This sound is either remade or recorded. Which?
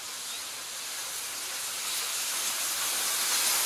recorded